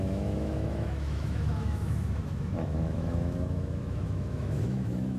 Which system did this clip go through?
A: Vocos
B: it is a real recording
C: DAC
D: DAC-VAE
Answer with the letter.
D